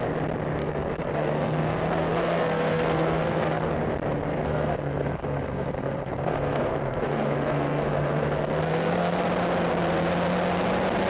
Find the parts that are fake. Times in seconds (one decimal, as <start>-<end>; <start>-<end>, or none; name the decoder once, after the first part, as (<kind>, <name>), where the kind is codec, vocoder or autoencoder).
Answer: 0.6-3.7 (codec, SNAC); 4.3-9.2